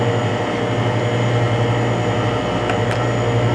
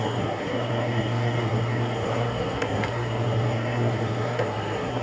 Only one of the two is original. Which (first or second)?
first